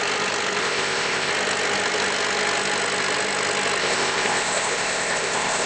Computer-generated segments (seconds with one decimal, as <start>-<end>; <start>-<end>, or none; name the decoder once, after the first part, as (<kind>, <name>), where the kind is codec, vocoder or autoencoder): 0.6-1.3 (codec, ZipCodec); 3.8-5.7